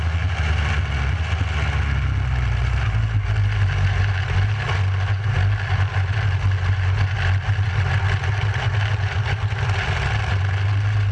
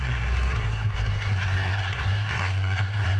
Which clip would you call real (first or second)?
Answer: first